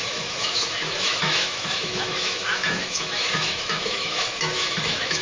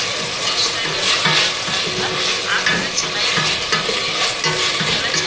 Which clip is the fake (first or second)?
first